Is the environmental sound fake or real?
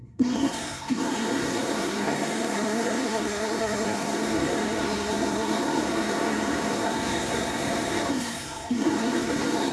fake